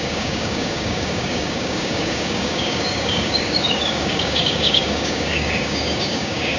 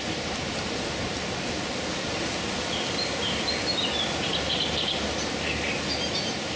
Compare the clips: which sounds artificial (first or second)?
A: first